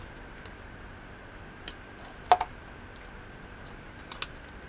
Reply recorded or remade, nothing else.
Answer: recorded